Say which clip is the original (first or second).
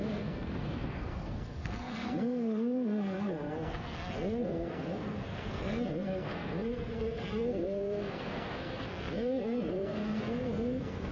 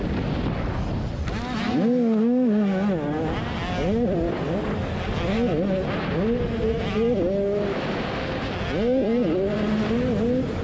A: second